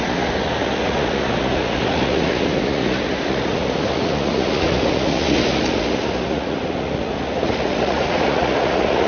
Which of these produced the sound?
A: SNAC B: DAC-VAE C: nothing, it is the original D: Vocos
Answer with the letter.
D